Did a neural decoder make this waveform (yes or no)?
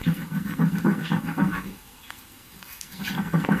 yes